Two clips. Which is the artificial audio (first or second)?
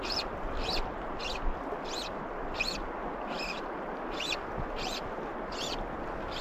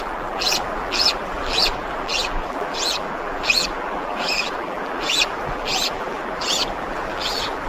second